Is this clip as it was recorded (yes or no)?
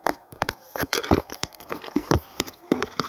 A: no